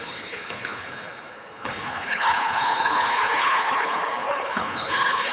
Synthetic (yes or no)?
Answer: yes